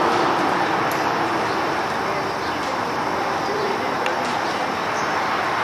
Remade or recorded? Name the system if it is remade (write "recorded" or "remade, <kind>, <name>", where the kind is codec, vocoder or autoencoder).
recorded